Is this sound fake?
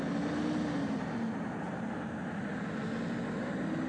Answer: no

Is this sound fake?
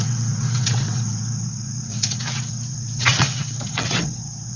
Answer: yes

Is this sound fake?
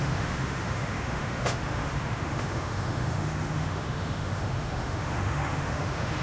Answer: yes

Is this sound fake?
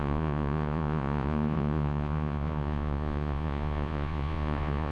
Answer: yes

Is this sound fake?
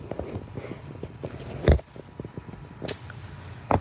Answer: no